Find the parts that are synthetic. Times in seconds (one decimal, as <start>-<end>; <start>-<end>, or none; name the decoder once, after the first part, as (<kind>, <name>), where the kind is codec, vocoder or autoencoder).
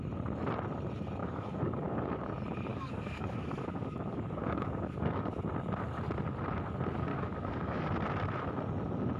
1.2-2.2 (codec, DAC); 2.7-5.4; 7.1-7.8